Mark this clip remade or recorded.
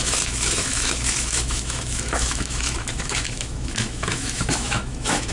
remade